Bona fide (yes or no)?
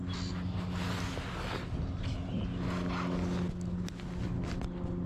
yes